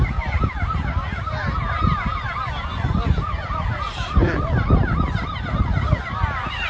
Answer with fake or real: real